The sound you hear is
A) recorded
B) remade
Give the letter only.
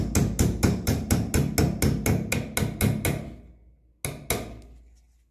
A